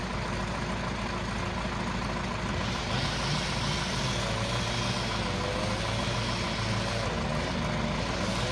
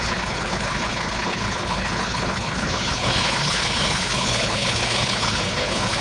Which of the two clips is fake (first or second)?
second